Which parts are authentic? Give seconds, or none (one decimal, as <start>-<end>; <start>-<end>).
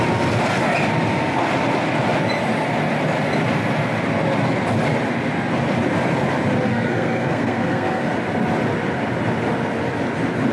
0.0-6.7; 8.1-10.5